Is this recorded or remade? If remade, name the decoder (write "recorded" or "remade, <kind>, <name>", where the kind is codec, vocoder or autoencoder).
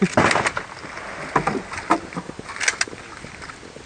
recorded